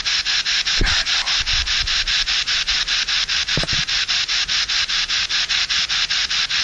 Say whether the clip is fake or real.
real